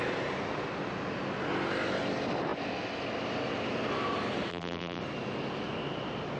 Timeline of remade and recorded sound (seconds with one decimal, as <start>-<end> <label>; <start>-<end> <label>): 0.0-4.5 recorded; 4.5-5.0 remade; 5.0-6.4 recorded